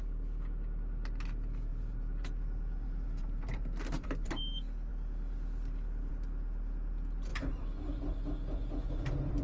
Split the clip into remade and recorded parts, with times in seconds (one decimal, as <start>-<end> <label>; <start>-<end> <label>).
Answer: 0.0-1.7 recorded; 1.7-4.4 remade; 4.4-7.3 recorded; 7.3-8.0 remade; 8.0-9.4 recorded